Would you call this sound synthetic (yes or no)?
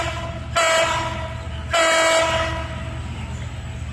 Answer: no